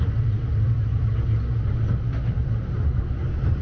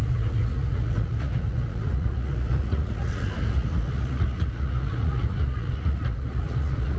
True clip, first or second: first